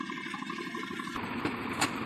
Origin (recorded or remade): remade